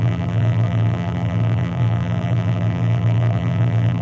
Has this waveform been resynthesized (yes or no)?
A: yes